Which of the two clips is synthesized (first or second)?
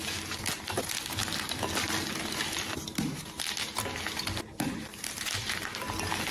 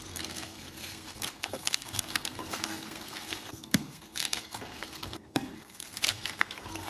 second